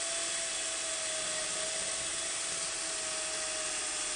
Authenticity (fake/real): real